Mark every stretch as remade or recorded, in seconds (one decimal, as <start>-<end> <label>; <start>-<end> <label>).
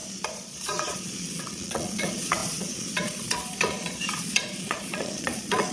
0.0-5.7 remade